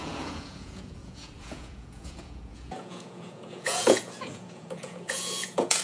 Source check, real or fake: fake